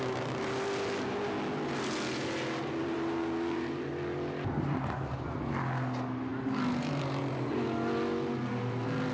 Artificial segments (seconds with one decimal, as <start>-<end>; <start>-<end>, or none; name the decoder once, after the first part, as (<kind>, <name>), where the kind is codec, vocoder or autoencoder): 2.8-3.9 (vocoder, BigVGAN v2)